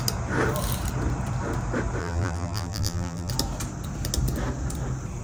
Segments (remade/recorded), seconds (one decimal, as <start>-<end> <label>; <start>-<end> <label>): 0.0-2.0 recorded; 2.0-3.3 remade; 3.3-5.2 recorded